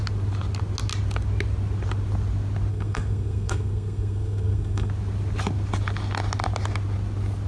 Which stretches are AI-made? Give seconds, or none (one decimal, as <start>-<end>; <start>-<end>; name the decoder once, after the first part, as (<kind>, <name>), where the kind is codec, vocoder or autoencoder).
2.7-4.9 (codec, SNAC)